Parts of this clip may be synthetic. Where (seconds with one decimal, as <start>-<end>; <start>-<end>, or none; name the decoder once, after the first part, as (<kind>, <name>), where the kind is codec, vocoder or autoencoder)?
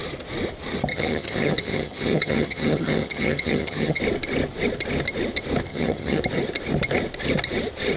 0.9-4.0 (vocoder, HiFi-GAN); 5.7-6.2